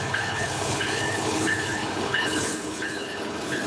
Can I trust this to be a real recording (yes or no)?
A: no